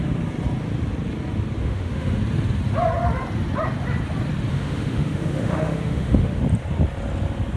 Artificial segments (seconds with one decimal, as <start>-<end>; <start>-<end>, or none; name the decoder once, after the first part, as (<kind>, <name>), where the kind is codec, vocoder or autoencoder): 1.6-2.2 (autoencoder, DAC-VAE); 4.5-6.4